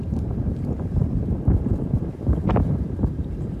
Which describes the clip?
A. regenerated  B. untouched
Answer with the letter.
A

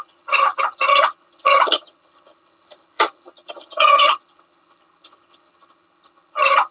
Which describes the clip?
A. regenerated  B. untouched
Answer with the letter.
A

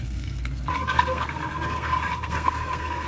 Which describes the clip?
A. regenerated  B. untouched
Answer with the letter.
A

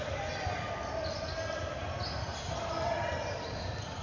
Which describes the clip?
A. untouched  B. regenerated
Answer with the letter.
A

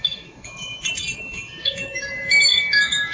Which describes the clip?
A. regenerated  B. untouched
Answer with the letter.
A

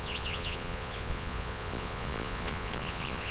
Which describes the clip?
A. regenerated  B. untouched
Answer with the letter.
A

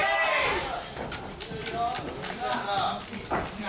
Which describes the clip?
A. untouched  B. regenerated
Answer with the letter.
A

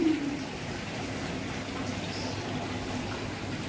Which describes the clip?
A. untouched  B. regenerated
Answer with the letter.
A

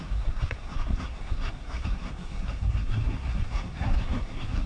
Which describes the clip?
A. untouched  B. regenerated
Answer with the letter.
B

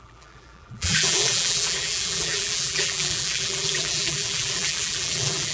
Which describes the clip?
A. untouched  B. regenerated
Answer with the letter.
B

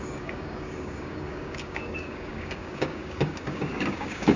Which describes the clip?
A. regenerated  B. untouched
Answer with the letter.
A